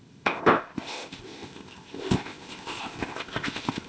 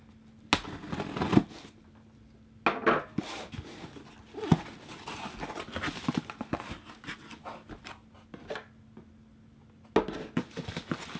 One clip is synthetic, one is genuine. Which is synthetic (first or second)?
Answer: first